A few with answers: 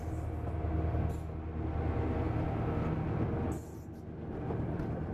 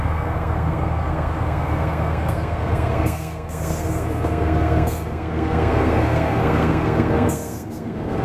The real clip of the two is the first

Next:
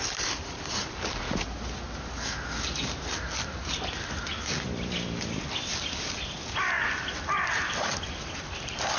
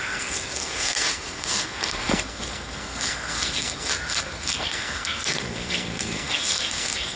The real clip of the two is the first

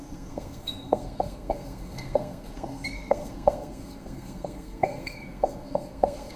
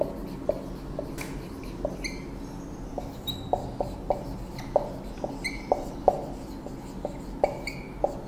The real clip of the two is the second